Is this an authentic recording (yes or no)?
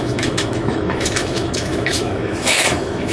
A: no